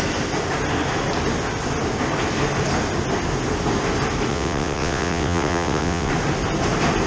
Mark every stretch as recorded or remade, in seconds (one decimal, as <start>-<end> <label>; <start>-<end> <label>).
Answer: 0.0-4.3 recorded; 4.3-6.1 remade; 6.1-7.1 recorded